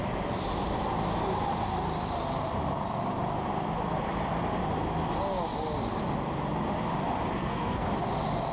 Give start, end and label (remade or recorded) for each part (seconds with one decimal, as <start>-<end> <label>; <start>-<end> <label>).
0.0-7.4 recorded; 7.4-7.9 remade; 7.9-8.5 recorded